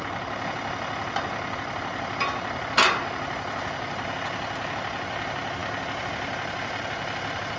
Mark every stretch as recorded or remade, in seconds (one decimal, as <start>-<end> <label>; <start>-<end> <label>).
0.0-7.6 recorded